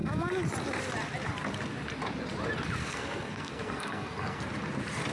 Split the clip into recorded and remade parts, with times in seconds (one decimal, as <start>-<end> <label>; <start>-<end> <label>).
0.0-2.8 recorded; 2.8-4.4 remade; 4.4-5.1 recorded